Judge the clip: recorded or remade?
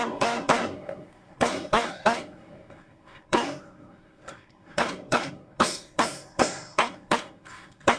remade